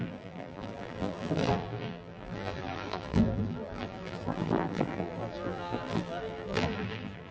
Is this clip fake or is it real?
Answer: fake